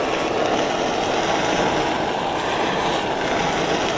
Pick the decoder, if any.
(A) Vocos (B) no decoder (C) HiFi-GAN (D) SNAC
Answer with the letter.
B